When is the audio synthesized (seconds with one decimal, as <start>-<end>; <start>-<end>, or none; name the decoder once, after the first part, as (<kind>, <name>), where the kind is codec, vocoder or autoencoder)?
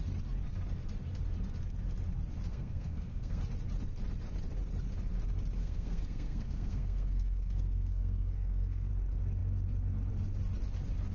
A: 2.5-3.4 (codec, SNAC); 5.6-8.9